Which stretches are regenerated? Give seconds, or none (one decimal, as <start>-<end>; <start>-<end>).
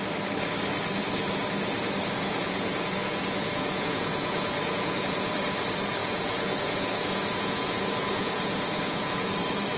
2.4-5.3; 6.0-9.3